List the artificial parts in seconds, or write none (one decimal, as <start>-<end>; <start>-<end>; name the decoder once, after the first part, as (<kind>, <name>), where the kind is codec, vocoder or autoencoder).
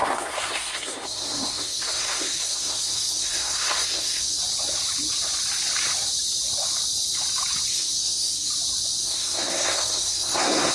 0.0-4.4 (codec, SNAC); 7.7-8.5; 9.0-10.7